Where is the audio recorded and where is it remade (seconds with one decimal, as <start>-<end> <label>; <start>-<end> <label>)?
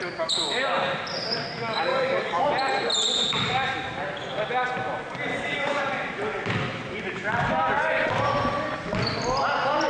0.0-1.9 recorded; 1.9-2.5 remade; 2.5-5.3 recorded; 5.3-5.8 remade; 5.8-9.9 recorded